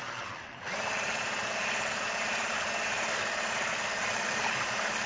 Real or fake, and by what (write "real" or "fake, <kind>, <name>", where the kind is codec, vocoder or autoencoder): real